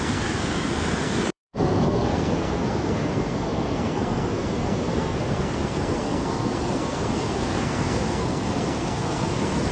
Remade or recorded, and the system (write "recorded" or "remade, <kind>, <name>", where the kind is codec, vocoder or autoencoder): remade, codec, SNAC